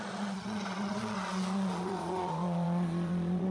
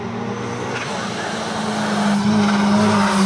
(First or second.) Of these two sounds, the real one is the second